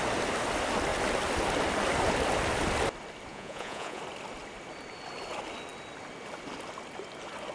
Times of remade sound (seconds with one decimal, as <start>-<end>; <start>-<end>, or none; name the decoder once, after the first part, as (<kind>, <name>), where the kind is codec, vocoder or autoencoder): 3.3-4.0 (vocoder, Vocos)